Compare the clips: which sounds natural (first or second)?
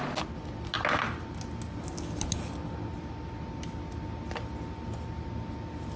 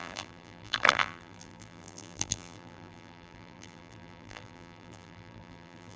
first